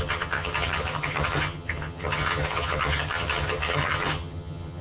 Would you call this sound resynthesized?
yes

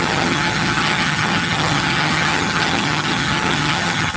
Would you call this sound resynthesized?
yes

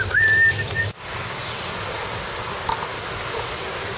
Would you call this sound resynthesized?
no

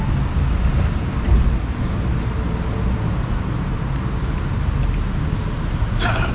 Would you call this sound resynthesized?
no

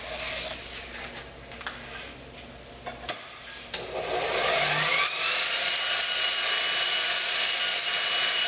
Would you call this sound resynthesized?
no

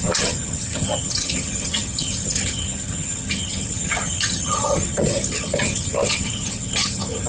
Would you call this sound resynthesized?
yes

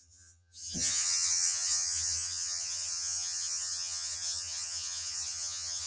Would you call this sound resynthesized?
yes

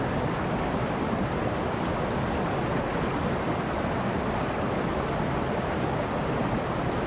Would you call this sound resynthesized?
no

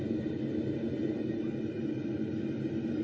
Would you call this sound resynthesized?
no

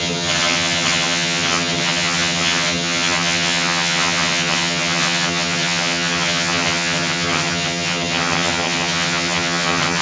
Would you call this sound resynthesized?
yes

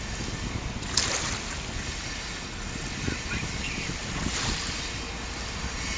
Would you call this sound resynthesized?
no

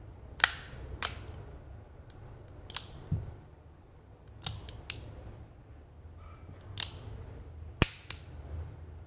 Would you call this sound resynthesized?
no